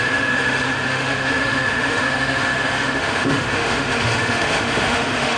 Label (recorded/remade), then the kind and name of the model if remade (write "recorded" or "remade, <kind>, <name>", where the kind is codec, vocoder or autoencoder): remade, autoencoder, DAC-VAE